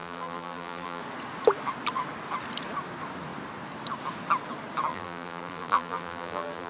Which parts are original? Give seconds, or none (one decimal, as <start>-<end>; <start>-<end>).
1.0-4.9